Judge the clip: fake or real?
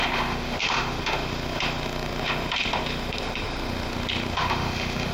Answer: fake